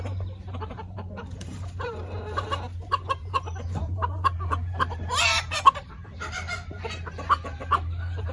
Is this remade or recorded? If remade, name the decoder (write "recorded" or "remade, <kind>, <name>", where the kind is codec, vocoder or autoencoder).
remade, vocoder, BigVGAN v2